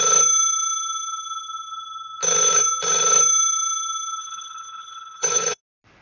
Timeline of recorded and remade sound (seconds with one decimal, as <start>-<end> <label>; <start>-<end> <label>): 0.0-4.2 recorded; 4.2-5.6 remade; 5.6-6.0 recorded